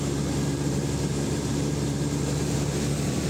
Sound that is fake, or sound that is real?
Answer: fake